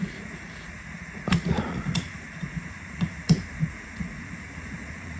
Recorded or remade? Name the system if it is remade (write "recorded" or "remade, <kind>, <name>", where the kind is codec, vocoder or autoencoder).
remade, vocoder, Vocos